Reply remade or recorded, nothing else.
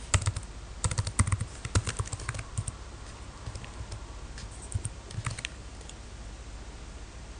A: recorded